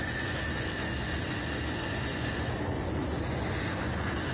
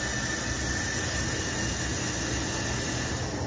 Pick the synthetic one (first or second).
first